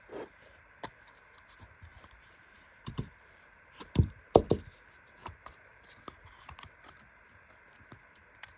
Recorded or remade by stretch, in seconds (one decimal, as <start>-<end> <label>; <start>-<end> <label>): 0.0-1.9 recorded; 1.9-4.4 remade; 4.4-5.2 recorded; 5.2-6.0 remade; 6.0-8.6 recorded